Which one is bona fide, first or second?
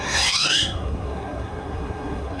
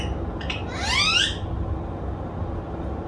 second